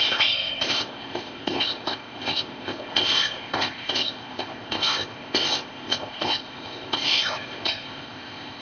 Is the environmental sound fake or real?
fake